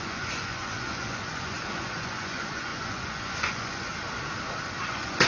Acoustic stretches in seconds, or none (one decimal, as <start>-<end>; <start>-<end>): 3.9-4.8